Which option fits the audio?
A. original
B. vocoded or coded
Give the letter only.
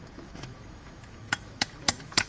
B